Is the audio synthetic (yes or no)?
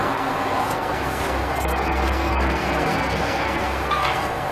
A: yes